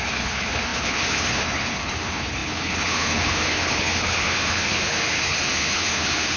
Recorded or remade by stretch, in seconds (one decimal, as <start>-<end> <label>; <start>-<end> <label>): 0.0-6.4 remade